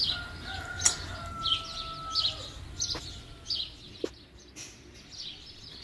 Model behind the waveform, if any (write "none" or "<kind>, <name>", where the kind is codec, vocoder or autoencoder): none